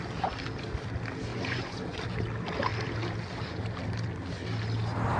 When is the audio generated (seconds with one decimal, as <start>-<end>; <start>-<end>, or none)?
1.3-2.0